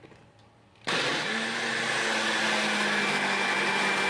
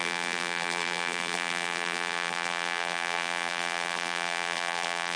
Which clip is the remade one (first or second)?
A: second